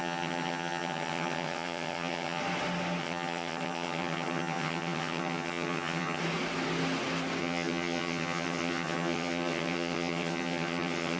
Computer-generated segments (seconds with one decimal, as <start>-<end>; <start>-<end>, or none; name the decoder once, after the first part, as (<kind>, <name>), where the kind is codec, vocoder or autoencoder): 0.0-2.4 (vocoder, HiFi-GAN); 3.0-6.2; 7.4-11.2